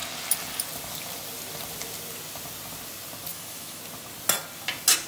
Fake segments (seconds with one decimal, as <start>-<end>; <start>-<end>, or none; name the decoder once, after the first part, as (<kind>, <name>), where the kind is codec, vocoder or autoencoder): 3.3-3.8 (autoencoder, DAC-VAE)